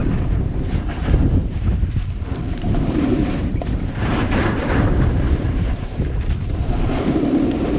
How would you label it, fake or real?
fake